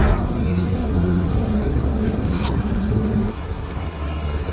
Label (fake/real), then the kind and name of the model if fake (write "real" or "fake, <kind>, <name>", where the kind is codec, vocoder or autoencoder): fake, codec, SNAC